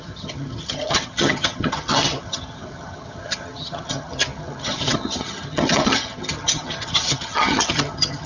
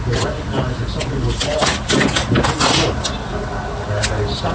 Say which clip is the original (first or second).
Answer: second